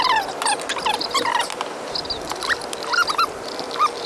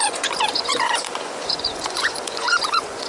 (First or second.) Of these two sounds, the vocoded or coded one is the second